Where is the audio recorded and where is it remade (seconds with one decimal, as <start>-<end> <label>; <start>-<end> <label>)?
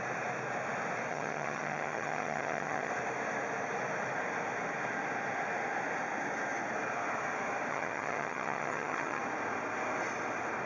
0.0-1.1 recorded; 1.1-2.9 remade; 2.9-7.7 recorded; 7.7-9.2 remade; 9.2-10.7 recorded